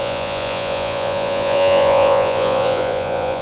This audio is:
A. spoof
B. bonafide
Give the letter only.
A